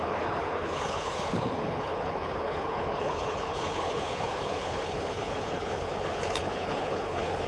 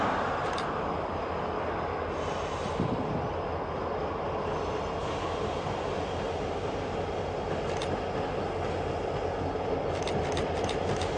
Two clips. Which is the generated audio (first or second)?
first